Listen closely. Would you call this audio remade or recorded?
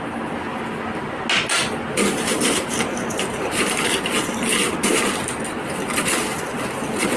recorded